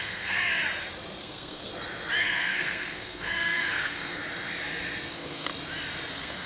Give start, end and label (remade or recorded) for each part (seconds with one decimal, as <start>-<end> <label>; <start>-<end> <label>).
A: 0.0-0.4 remade; 0.4-1.2 recorded; 1.2-1.7 remade; 1.7-2.2 recorded; 2.2-4.2 remade; 4.2-5.1 recorded; 5.1-5.5 remade; 5.5-6.1 recorded; 6.1-6.5 remade